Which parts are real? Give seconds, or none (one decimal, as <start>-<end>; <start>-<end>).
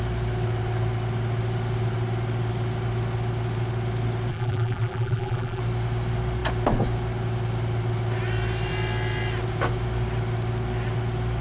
0.0-4.3; 5.6-11.4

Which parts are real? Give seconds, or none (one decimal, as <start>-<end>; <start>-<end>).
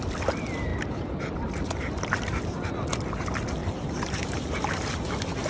0.0-3.6; 4.4-5.5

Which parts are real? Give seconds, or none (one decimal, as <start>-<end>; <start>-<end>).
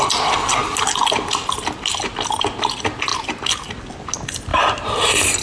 0.0-4.5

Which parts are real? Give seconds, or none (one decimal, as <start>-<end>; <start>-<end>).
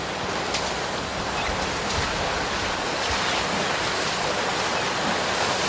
0.0-5.7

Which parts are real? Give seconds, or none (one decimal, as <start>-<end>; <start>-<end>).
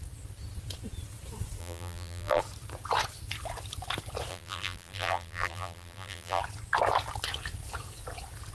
0.0-1.6; 2.4-4.3; 6.4-8.5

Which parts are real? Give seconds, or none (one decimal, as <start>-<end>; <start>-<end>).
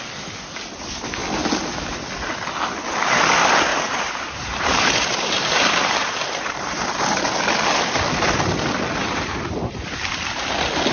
0.0-3.7; 7.0-9.0; 10.5-10.9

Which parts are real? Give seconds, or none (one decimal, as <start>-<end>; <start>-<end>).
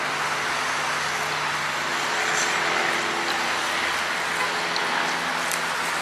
0.0-6.0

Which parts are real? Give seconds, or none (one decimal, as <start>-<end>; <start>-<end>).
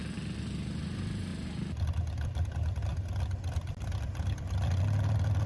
0.0-0.8; 1.3-2.2